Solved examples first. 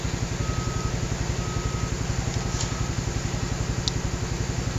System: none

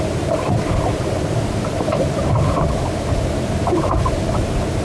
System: vocoder, BigVGAN v2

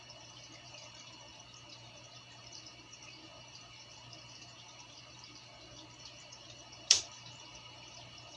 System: vocoder, BigVGAN v2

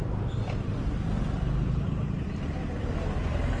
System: vocoder, BigVGAN v2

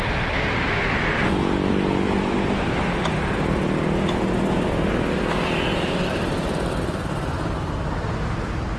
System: none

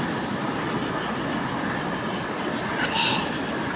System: none